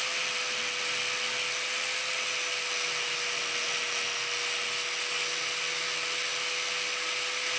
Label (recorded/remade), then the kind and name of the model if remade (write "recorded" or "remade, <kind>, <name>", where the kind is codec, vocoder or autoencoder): recorded